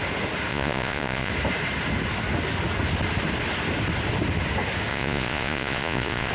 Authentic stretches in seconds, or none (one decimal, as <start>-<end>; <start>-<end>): 0.0-0.5; 1.3-4.9